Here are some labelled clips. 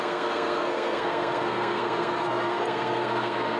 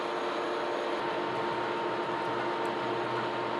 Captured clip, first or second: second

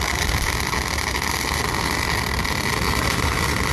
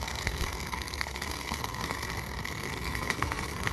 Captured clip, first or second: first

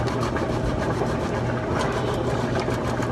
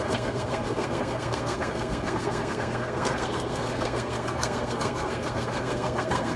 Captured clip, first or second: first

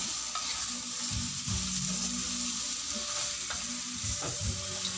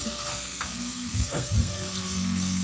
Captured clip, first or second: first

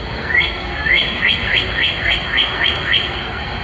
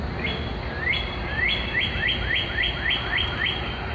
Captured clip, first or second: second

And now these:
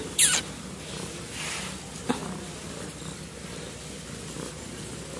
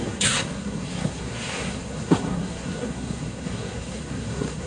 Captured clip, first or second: first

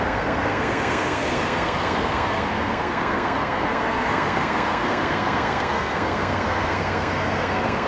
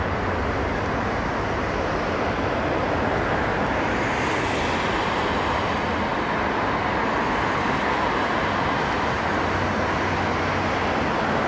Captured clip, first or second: second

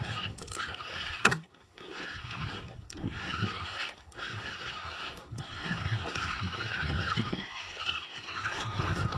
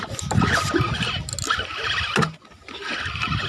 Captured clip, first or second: second